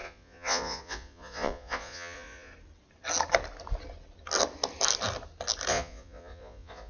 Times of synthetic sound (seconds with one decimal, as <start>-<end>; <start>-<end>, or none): 0.0-2.5; 5.7-6.9

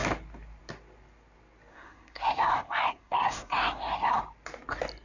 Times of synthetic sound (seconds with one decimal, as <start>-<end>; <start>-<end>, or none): 1.7-4.2

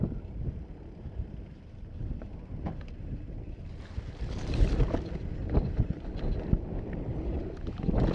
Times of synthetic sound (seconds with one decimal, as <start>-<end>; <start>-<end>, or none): 0.0-4.7; 5.4-7.1

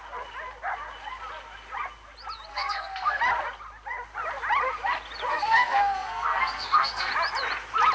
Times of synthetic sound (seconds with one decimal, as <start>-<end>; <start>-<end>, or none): 2.5-3.2; 5.3-7.1